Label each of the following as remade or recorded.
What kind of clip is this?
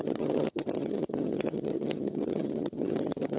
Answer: remade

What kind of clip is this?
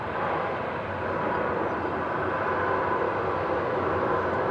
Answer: recorded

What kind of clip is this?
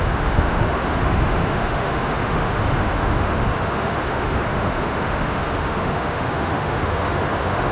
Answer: remade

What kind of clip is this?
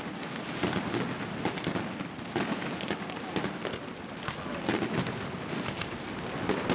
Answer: recorded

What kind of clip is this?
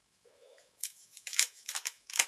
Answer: remade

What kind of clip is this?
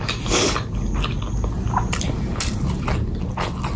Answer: recorded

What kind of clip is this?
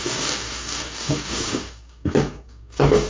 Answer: remade